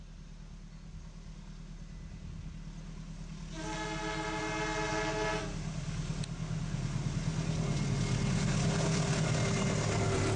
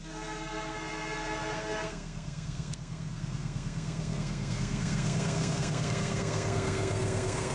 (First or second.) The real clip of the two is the first